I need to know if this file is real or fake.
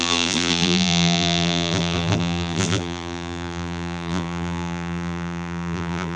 fake